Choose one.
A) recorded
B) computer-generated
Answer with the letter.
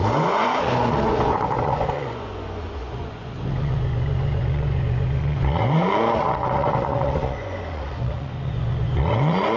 B